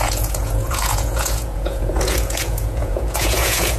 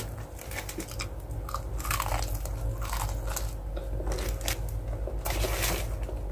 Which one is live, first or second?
second